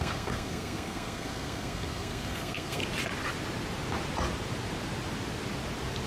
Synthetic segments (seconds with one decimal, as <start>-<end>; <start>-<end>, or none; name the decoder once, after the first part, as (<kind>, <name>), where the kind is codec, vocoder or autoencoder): 0.0-2.8 (codec, SNAC)